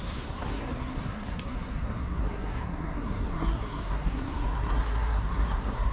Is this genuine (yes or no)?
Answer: no